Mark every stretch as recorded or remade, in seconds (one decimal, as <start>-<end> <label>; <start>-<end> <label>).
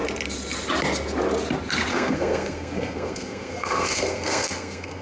0.0-1.9 recorded; 1.9-5.0 remade